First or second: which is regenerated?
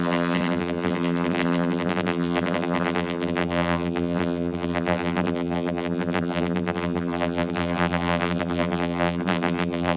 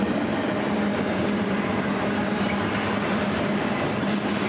first